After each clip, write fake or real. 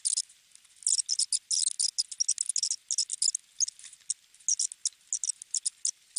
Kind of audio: real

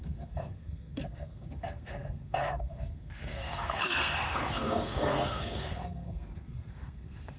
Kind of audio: fake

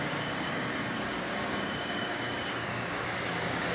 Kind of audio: fake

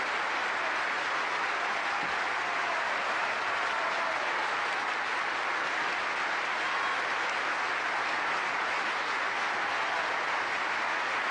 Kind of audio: real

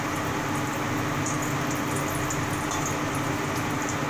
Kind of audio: real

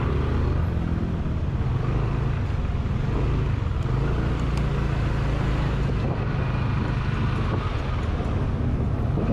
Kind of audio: real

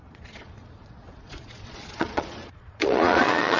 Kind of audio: fake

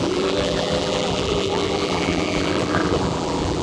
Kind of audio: fake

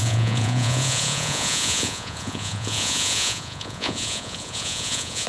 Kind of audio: fake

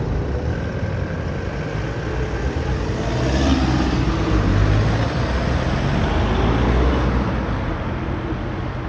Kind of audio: real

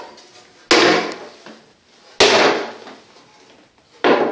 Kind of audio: real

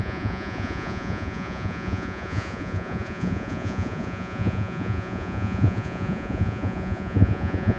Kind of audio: fake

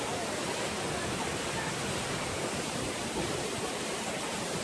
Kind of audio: real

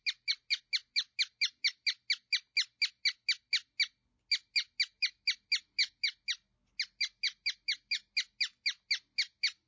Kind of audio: real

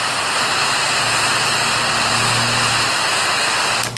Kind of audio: real